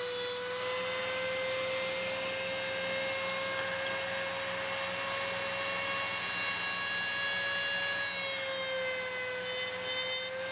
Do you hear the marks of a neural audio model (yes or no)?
no